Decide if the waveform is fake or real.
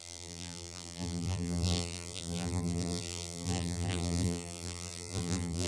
fake